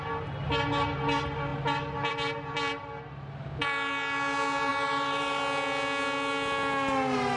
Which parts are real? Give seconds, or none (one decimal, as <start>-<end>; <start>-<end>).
0.0-4.7; 5.4-7.4